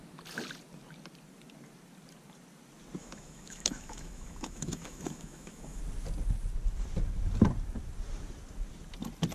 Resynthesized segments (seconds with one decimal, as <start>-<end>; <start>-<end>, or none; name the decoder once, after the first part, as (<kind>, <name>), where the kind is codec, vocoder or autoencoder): 3.0-5.8 (autoencoder, DAC-VAE)

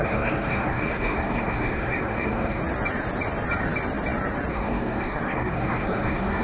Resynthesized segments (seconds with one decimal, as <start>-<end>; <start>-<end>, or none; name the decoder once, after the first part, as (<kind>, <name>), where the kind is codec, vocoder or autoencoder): 0.0-2.6 (codec, SNAC); 4.5-6.4

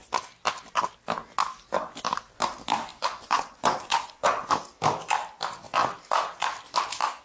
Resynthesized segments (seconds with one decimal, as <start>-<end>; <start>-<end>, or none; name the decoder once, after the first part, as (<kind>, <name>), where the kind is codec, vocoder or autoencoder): 2.9-4.5 (vocoder, Vocos)

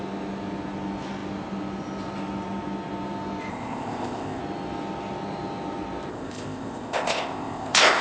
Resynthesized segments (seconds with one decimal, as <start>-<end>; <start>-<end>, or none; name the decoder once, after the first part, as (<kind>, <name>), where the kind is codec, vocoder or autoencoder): 3.5-4.4 (codec, ZipCodec); 6.1-8.0

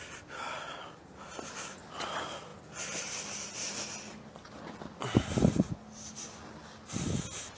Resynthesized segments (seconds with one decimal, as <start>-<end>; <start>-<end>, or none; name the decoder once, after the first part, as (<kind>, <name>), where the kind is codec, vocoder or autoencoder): none